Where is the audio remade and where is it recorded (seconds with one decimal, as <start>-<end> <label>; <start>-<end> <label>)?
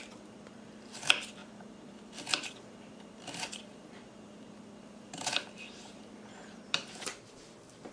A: 0.0-7.9 remade